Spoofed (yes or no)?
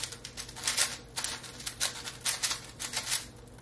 no